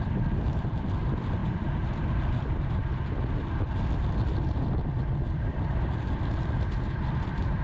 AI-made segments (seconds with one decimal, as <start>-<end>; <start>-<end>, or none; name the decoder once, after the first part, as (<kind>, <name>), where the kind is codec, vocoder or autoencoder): 0.0-7.6 (vocoder, BigVGAN v2)